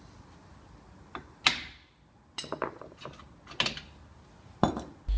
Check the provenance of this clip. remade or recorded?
recorded